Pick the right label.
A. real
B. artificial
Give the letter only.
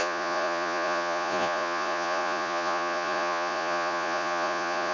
B